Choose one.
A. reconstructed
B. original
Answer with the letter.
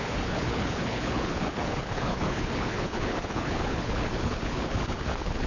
A